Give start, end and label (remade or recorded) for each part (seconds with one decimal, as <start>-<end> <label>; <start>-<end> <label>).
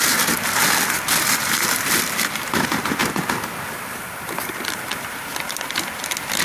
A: 0.0-6.4 recorded